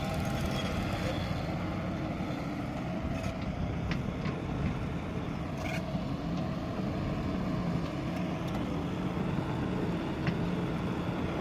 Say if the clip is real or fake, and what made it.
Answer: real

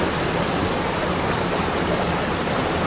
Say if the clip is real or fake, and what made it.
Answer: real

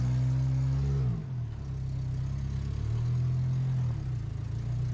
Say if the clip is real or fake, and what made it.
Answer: real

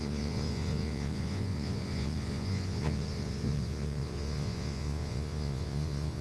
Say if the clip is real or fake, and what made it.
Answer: fake, vocoder, Vocos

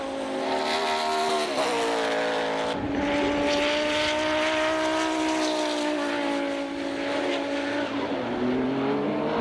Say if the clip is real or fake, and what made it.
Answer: real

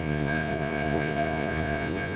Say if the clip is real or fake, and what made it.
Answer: fake, vocoder, Vocos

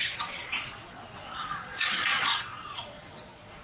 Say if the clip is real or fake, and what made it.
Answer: fake, vocoder, Vocos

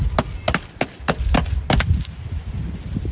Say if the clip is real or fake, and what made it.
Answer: real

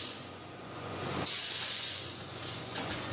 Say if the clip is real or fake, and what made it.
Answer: fake, vocoder, Vocos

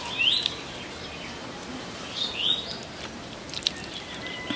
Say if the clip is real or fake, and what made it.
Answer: real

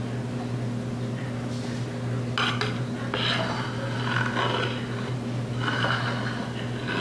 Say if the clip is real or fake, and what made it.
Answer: real